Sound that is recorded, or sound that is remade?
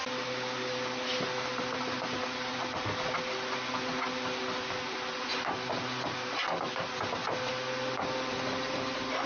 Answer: recorded